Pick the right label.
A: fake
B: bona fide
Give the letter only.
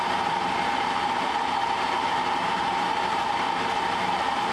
A